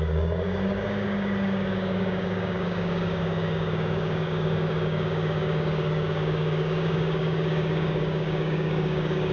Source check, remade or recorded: remade